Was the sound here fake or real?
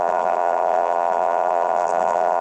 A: fake